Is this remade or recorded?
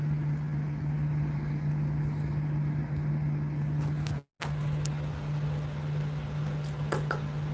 recorded